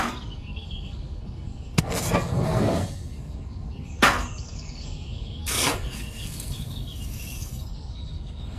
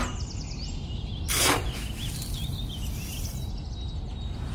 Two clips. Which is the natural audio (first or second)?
second